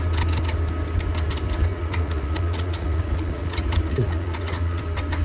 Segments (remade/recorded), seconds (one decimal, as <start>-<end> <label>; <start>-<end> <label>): 0.0-1.7 recorded; 1.7-4.8 remade; 4.8-5.2 recorded